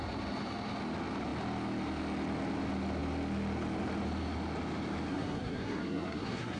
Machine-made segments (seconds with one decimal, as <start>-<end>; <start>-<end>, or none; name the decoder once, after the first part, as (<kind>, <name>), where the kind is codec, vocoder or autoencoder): 5.1-6.6 (codec, SNAC)